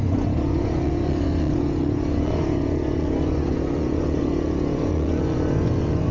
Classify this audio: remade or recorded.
remade